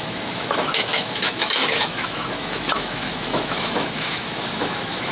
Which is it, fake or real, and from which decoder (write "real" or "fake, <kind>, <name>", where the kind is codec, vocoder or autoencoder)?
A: fake, autoencoder, DAC-VAE